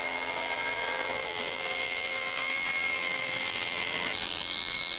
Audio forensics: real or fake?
fake